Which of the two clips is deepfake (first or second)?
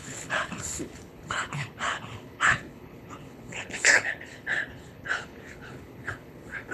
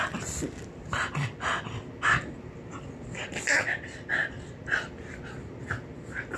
first